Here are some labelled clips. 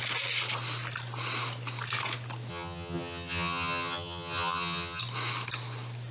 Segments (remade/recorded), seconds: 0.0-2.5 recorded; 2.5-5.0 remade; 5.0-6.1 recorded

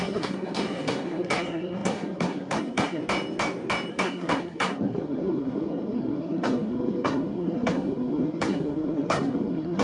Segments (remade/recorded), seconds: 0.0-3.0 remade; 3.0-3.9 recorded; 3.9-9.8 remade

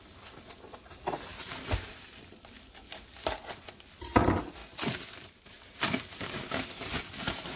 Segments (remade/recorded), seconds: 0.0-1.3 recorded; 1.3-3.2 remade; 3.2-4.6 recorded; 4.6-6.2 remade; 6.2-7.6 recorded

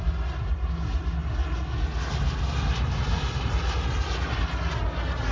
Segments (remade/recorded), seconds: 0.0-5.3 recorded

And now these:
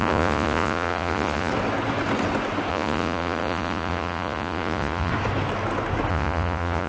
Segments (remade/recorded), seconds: 0.0-1.5 remade; 1.5-2.7 recorded; 2.7-5.1 remade; 5.1-6.1 recorded; 6.1-6.9 remade

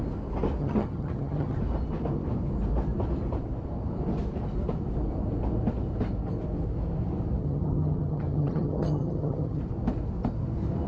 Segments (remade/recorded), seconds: 0.0-0.6 recorded; 0.6-1.6 remade; 1.6-7.4 recorded; 7.4-9.6 remade; 9.6-10.9 recorded

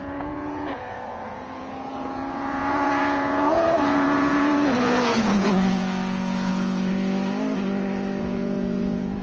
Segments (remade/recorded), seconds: 0.0-6.9 remade; 6.9-8.2 recorded; 8.2-9.2 remade